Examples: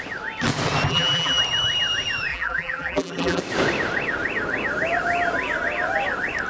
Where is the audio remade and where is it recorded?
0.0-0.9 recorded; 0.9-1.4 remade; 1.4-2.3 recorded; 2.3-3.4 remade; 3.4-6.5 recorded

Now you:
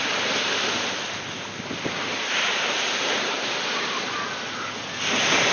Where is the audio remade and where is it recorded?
0.0-2.1 recorded; 2.1-3.5 remade; 3.5-5.5 recorded

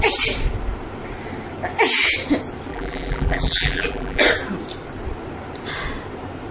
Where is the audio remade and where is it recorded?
0.0-2.7 recorded; 2.7-4.2 remade; 4.2-6.5 recorded

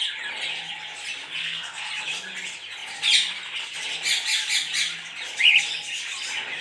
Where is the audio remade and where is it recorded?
0.0-1.4 recorded; 1.4-1.9 remade; 1.9-6.6 recorded

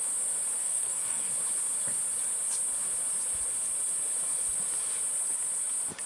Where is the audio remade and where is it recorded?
0.0-0.6 recorded; 0.6-1.3 remade; 1.3-6.1 recorded